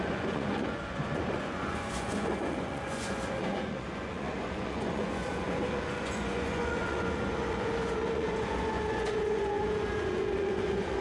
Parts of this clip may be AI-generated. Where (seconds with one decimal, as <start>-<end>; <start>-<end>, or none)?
0.0-11.0